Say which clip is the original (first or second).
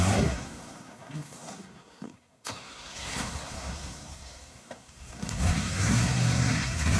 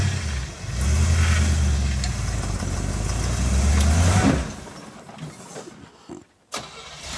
second